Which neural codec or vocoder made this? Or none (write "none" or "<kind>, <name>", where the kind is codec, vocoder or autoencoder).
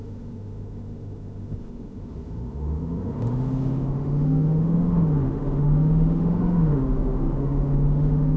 autoencoder, DAC-VAE